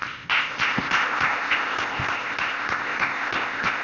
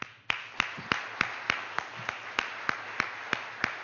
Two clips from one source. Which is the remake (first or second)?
first